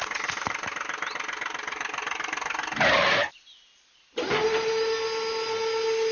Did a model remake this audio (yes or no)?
no